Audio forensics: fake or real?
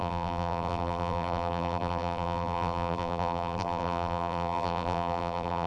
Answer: fake